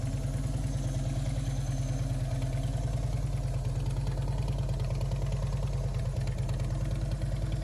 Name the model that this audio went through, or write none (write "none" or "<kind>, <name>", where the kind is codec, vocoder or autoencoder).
none